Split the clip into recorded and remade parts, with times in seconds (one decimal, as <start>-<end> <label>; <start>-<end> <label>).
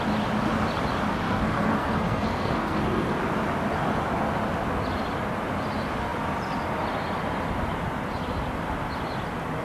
0.0-1.1 recorded; 1.1-3.2 remade; 3.2-9.6 recorded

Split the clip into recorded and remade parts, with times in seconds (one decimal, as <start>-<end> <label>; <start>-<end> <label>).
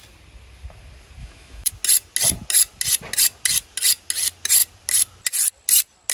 0.0-1.2 recorded; 1.2-1.7 remade; 1.7-6.1 recorded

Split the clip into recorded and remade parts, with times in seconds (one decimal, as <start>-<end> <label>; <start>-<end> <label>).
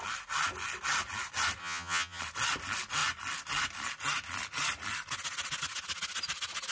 0.0-1.6 recorded; 1.6-2.2 remade; 2.2-6.7 recorded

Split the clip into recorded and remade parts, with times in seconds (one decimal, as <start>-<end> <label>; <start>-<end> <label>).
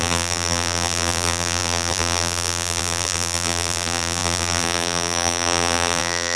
0.0-6.4 remade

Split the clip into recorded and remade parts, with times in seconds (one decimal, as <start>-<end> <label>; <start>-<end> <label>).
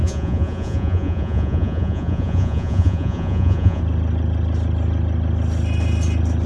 0.0-3.8 remade; 3.8-6.5 recorded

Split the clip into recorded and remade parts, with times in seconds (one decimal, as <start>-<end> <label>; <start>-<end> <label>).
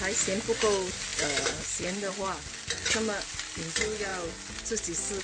0.0-5.2 recorded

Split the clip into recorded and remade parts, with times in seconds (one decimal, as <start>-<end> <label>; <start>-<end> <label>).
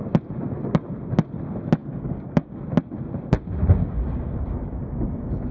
0.0-1.8 recorded; 1.8-2.6 remade; 2.6-3.8 recorded; 3.8-5.5 remade